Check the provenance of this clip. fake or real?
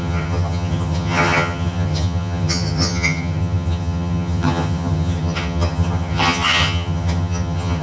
fake